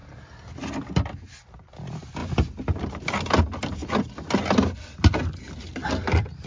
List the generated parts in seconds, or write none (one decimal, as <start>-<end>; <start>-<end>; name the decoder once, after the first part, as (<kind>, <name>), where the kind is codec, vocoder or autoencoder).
none